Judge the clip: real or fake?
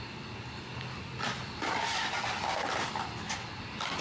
real